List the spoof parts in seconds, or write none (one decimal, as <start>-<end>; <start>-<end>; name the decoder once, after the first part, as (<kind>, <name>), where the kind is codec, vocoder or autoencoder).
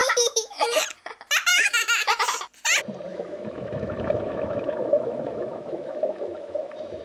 0.0-0.8 (autoencoder, DAC-VAE); 1.5-2.2; 3.1-7.0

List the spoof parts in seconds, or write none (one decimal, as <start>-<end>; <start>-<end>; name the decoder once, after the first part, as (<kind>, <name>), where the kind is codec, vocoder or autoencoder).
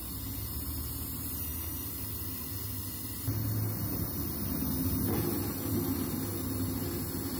none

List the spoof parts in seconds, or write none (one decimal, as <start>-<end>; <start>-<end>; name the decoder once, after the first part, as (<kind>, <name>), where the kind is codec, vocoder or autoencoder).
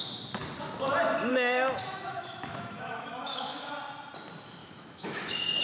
1.3-3.7 (autoencoder, DAC-VAE); 4.6-5.6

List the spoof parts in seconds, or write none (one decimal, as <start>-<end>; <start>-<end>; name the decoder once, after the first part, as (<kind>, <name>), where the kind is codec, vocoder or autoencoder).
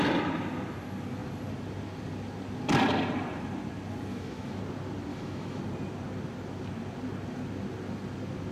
4.1-4.6 (autoencoder, DAC-VAE); 5.1-5.6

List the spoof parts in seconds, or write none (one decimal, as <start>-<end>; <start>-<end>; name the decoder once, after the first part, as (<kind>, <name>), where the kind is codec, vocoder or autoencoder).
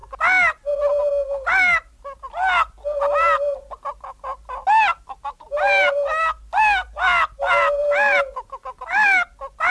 none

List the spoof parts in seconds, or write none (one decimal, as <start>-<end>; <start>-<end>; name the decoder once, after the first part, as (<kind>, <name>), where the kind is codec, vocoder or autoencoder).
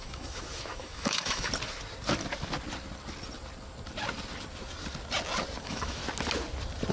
0.0-1.5 (autoencoder, DAC-VAE); 5.6-6.0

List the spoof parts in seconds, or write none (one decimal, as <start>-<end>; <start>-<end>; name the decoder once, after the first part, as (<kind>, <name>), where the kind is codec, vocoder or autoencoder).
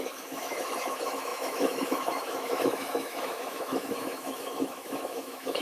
0.0-5.6 (autoencoder, DAC-VAE)